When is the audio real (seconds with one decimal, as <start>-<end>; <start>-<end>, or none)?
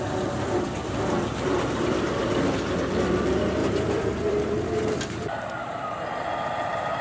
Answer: 0.0-3.6; 4.7-7.0